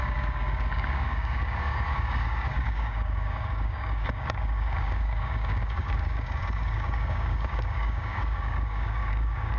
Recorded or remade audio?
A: remade